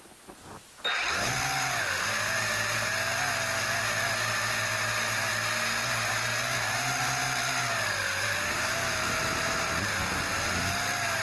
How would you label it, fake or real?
real